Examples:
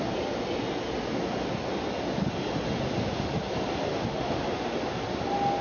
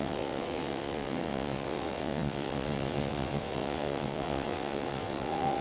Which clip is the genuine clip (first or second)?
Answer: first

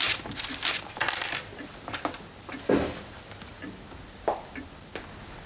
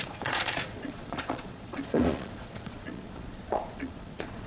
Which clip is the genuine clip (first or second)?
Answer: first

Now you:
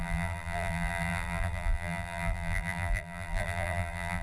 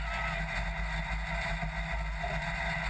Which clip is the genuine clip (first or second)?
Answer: second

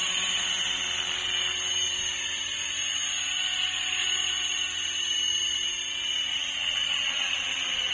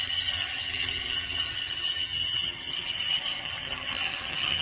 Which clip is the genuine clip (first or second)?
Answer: first